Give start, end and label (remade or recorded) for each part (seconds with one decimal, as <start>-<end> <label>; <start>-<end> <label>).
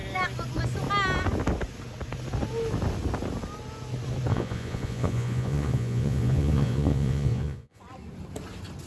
0.0-4.3 recorded; 4.3-7.8 remade; 7.8-8.9 recorded